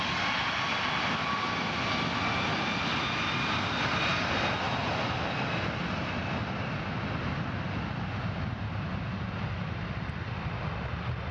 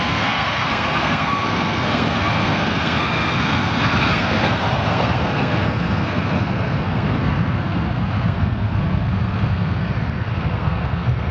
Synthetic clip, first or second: second